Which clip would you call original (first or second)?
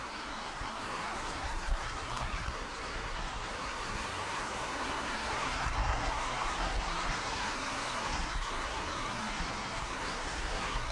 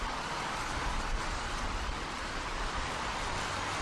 second